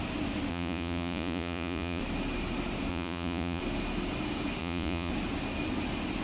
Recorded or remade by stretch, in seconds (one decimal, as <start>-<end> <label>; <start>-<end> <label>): 0.0-0.5 recorded; 0.5-2.0 remade; 2.0-2.9 recorded; 2.9-3.6 remade; 3.6-4.6 recorded; 4.6-5.1 remade; 5.1-6.2 recorded